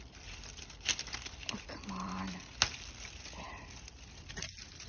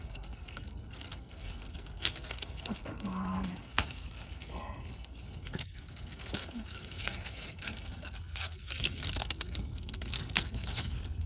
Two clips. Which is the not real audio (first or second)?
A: second